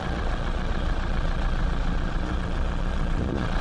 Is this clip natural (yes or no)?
no